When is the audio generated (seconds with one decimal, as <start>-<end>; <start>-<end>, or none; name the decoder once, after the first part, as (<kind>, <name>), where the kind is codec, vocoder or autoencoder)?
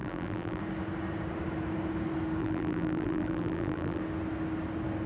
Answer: 0.0-0.6 (vocoder, BigVGAN v2); 2.4-4.0